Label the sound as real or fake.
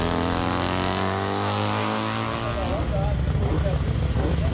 real